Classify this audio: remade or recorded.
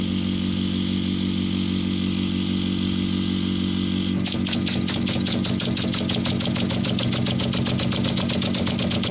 recorded